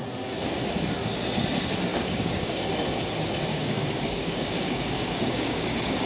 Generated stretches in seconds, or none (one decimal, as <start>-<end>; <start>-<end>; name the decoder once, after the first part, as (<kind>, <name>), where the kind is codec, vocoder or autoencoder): 1.9-2.7 (codec, DAC); 3.5-6.1